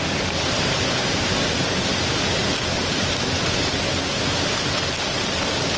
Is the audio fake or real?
real